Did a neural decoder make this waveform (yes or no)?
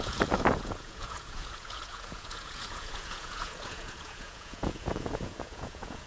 yes